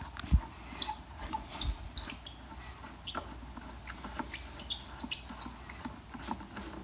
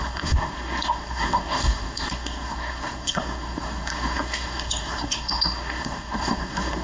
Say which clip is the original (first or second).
first